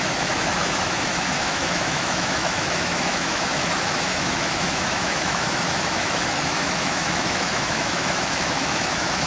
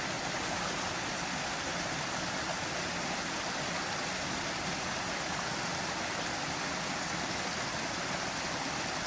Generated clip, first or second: first